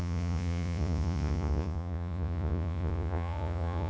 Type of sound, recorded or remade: remade